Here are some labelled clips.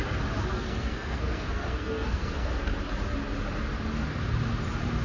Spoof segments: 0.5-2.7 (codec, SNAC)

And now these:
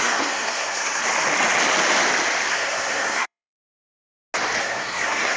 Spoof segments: 0.0-1.0 (codec, SNAC); 2.5-3.7; 4.6-5.4

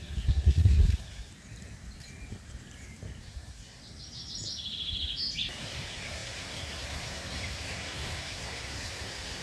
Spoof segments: 0.0-1.3 (codec, SNAC); 3.2-3.8; 5.6-9.4

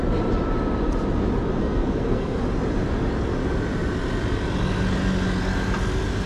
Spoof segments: 1.6-2.4 (codec, SNAC)

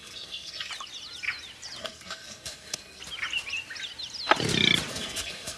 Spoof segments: 0.0-0.7 (codec, SNAC); 1.8-3.0; 4.9-5.6